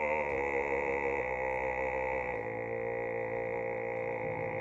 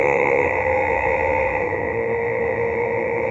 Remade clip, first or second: second